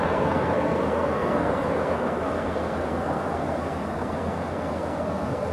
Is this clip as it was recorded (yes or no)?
no